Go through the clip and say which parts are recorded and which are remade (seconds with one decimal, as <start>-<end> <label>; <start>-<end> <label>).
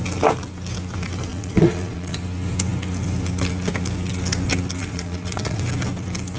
0.0-1.3 recorded; 1.3-2.2 remade; 2.2-4.8 recorded; 4.8-5.6 remade; 5.6-6.4 recorded